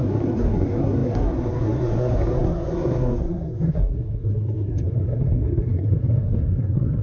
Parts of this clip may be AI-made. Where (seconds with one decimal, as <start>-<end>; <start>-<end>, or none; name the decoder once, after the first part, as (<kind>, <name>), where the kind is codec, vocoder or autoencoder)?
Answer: 0.0-7.0 (codec, SNAC)